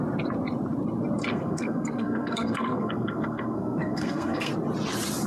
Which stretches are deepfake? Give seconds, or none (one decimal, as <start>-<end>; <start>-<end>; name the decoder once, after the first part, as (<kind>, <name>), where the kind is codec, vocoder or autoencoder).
1.3-4.5 (codec, SNAC)